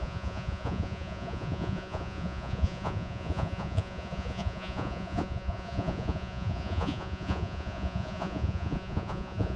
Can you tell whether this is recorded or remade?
remade